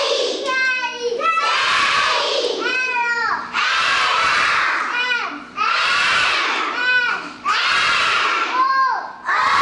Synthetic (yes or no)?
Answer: yes